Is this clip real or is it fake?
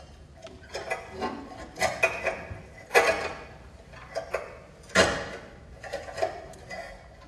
real